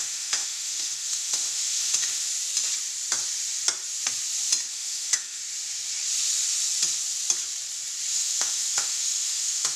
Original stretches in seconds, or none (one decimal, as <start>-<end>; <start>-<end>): 2.3-4.7; 5.4-8.1